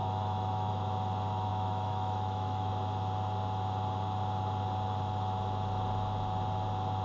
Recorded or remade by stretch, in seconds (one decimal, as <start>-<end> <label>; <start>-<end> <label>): 0.0-0.7 remade; 0.7-1.5 recorded; 1.5-2.7 remade; 2.7-7.0 recorded